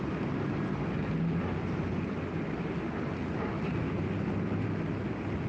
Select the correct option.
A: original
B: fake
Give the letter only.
A